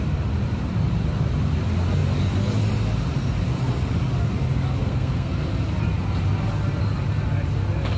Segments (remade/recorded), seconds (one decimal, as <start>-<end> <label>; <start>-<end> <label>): 0.0-4.8 recorded; 4.8-5.3 remade; 5.3-8.0 recorded